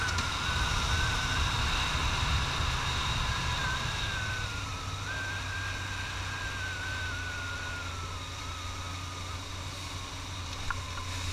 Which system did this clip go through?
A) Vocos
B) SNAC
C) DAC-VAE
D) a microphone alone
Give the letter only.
D